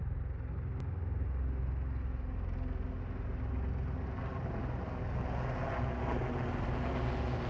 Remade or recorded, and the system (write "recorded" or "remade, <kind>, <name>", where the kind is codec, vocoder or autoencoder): recorded